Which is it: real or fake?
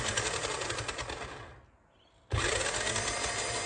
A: real